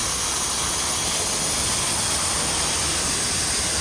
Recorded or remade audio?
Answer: recorded